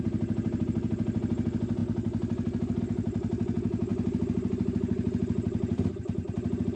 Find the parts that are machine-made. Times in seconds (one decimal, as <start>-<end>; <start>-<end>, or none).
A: none